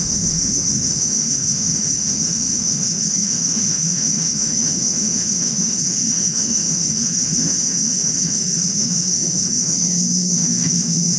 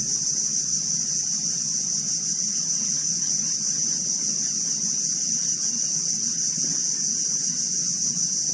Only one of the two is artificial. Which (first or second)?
first